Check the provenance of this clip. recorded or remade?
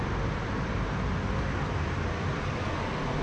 recorded